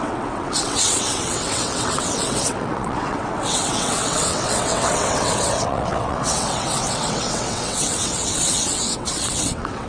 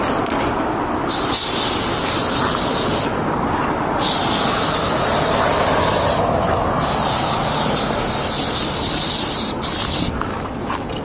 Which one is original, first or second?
second